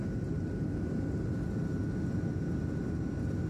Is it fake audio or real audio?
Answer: real